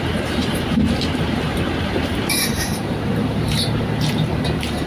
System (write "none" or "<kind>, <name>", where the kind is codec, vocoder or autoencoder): vocoder, BigVGAN v2